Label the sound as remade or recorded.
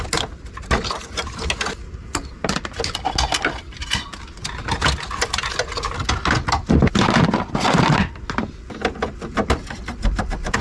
recorded